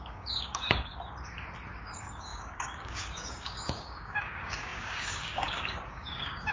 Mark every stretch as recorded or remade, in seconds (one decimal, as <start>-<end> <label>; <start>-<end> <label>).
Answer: 0.0-0.9 remade; 0.9-1.8 recorded; 1.8-6.5 remade